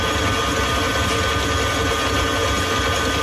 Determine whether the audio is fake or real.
real